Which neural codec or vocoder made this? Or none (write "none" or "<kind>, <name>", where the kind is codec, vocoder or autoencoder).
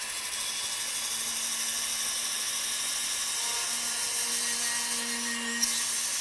none